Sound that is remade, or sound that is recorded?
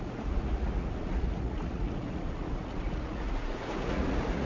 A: remade